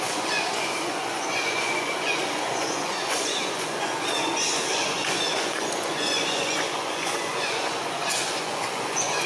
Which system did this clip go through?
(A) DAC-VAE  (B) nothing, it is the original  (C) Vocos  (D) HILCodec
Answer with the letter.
C